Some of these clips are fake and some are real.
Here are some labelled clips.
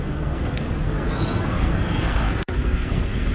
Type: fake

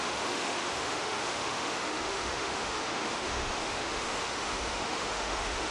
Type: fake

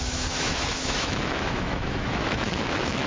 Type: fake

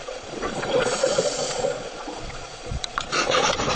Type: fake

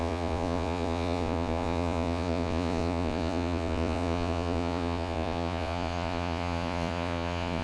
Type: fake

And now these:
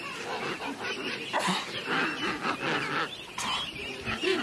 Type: real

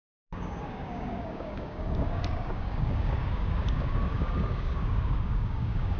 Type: fake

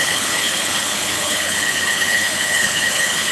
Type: fake